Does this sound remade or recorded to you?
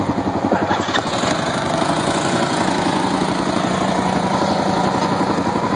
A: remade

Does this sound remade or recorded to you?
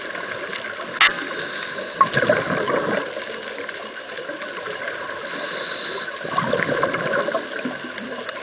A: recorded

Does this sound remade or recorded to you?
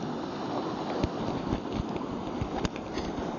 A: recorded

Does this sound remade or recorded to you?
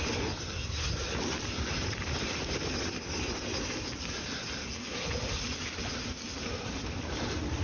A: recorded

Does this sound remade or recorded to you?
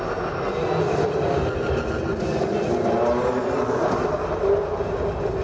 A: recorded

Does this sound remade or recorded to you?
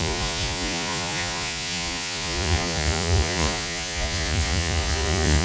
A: remade